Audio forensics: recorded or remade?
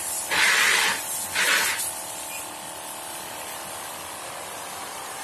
recorded